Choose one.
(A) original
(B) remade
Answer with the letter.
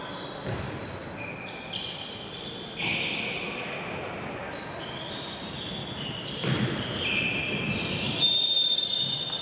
A